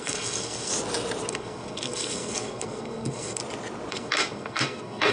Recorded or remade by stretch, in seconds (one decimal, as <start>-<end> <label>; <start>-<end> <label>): 0.0-0.7 remade; 0.7-1.3 recorded; 1.3-3.4 remade; 3.4-3.9 recorded; 3.9-5.1 remade